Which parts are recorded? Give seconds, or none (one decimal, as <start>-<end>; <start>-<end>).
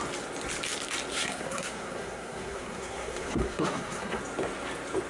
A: 0.0-1.1; 4.2-5.1